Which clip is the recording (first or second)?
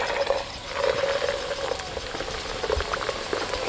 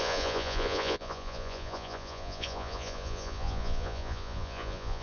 first